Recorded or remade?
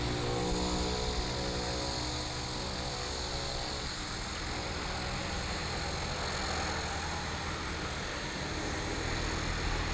recorded